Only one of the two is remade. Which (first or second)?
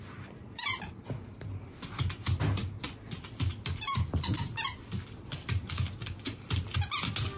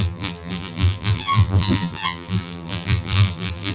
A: second